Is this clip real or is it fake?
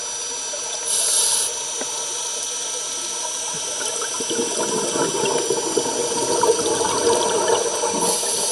real